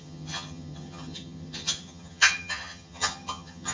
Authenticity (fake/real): fake